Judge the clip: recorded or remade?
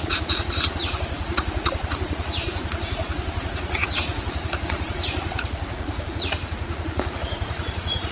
remade